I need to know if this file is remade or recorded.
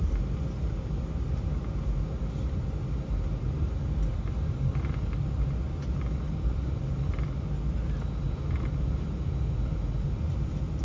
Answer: recorded